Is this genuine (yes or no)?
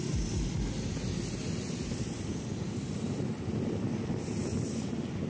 yes